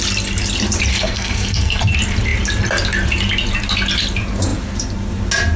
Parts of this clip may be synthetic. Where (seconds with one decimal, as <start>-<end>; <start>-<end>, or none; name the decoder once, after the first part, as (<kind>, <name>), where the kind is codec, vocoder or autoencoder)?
0.9-1.8 (codec, SNAC)